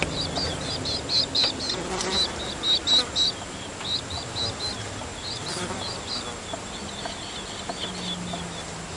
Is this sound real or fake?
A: real